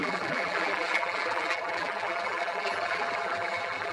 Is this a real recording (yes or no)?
no